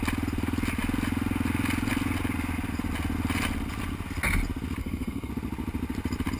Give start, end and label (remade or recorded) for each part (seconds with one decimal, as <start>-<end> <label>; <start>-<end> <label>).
0.0-4.8 recorded; 4.8-5.3 remade; 5.3-6.4 recorded